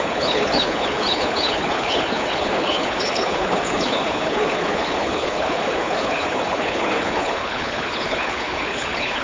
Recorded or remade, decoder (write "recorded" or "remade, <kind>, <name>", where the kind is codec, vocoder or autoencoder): remade, codec, HILCodec